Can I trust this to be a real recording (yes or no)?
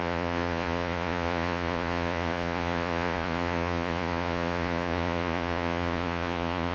no